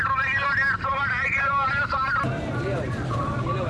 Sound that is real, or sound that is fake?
real